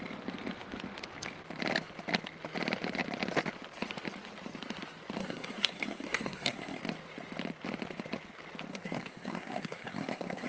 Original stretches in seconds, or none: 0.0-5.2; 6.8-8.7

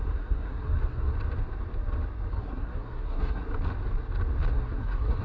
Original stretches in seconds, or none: 1.1-2.4; 3.4-4.5

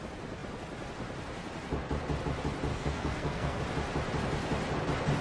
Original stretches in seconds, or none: 0.0-2.7; 3.6-5.2